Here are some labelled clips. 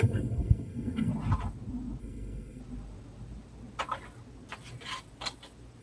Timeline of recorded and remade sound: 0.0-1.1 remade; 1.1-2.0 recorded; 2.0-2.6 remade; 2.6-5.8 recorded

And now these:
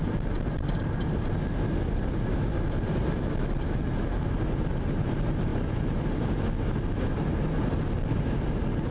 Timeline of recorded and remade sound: 0.0-8.9 recorded

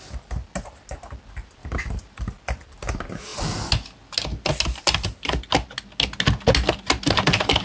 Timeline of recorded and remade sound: 0.0-1.6 recorded; 1.6-2.2 remade; 2.2-7.6 recorded

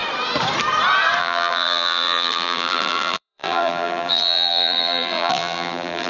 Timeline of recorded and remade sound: 0.0-1.2 recorded; 1.2-6.1 remade

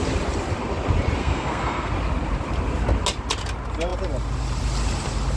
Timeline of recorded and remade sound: 0.0-1.2 recorded; 1.2-1.9 remade; 1.9-5.4 recorded

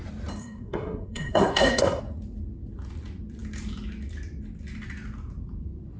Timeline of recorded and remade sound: 0.0-0.4 recorded; 0.4-2.0 remade; 2.0-6.0 recorded